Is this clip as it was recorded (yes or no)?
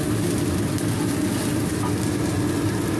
yes